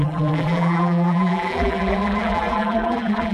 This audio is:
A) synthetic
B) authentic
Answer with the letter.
A